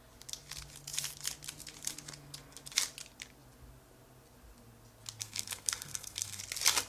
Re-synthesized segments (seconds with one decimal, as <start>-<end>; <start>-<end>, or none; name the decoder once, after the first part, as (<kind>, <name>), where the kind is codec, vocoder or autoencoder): 5.2-6.4 (codec, SNAC)